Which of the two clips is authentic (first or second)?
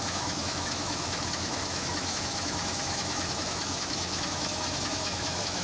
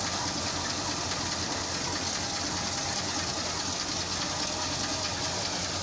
second